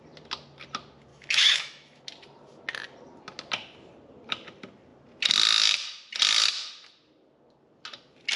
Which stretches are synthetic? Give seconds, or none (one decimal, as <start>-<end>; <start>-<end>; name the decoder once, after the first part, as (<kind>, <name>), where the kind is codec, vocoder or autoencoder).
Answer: 1.1-2.0 (autoencoder, DAC-VAE)